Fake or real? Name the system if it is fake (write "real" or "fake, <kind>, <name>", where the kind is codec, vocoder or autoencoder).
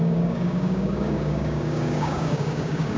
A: fake, codec, DAC